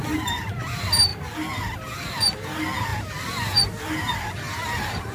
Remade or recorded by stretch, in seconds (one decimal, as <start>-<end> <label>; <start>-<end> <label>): 0.0-5.1 recorded